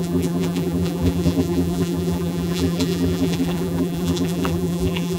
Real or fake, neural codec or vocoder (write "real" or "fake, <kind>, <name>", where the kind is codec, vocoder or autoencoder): fake, vocoder, BigVGAN v2